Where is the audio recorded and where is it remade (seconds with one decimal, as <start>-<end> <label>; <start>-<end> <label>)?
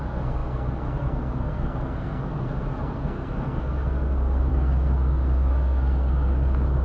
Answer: 0.0-6.8 remade